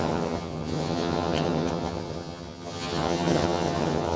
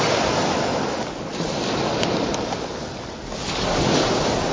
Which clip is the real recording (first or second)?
second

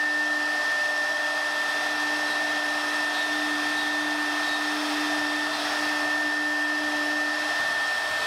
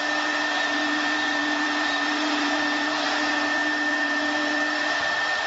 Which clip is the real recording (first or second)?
first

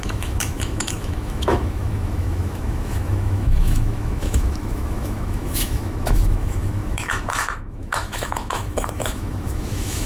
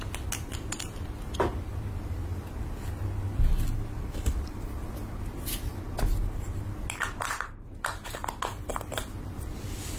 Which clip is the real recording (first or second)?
second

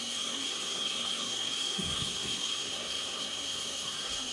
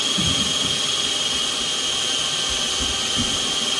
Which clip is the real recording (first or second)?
second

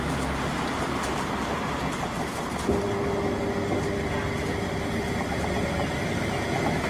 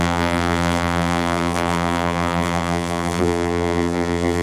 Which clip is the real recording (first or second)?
first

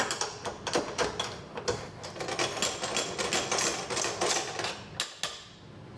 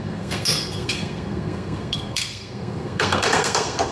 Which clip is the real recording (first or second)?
first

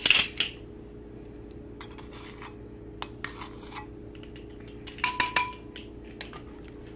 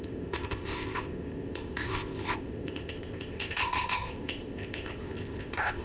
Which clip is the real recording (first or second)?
first